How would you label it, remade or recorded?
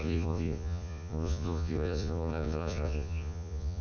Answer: remade